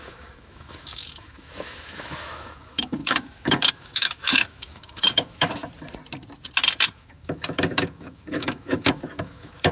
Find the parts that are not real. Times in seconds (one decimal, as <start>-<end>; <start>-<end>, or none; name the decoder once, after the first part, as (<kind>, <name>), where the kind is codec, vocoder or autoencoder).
0.0-5.6 (autoencoder, DAC-VAE); 6.9-9.7